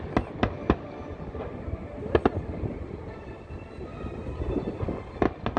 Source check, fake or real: real